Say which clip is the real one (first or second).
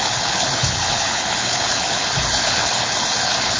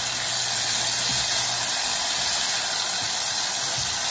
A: second